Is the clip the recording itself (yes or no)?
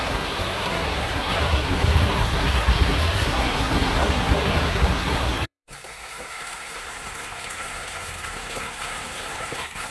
no